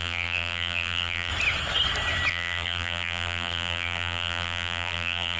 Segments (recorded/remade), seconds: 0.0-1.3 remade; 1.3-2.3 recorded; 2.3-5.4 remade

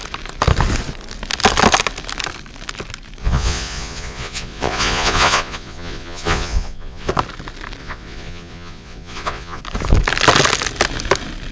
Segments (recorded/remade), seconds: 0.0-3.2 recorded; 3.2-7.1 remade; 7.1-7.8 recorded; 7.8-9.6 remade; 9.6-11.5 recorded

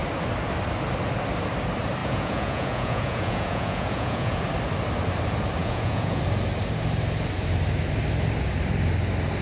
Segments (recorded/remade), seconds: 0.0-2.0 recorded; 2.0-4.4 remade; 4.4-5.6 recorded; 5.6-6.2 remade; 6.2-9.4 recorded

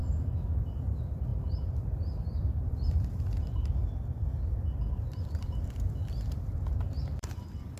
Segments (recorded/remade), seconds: 0.0-0.6 recorded; 0.6-1.3 remade; 1.3-2.4 recorded; 2.4-3.8 remade; 3.8-4.5 recorded; 4.5-7.8 remade

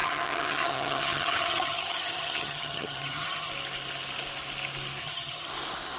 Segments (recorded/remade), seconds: 0.0-3.5 remade; 3.5-5.0 recorded; 5.0-5.5 remade; 5.5-6.0 recorded

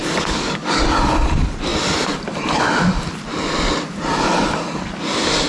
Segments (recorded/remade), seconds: 0.0-0.8 remade; 0.8-5.5 recorded

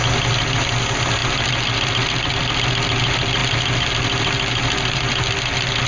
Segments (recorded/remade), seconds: 0.0-1.2 recorded; 1.2-2.3 remade; 2.3-5.9 recorded